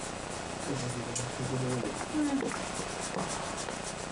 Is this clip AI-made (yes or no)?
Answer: no